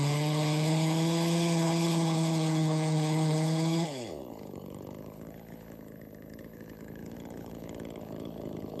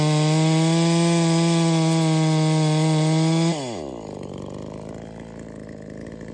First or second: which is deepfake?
first